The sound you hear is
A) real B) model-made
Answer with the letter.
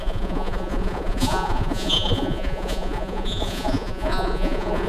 B